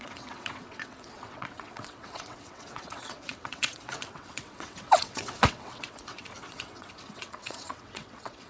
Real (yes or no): no